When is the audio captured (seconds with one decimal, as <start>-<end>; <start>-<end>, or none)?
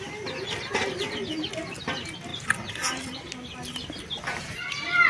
0.0-5.1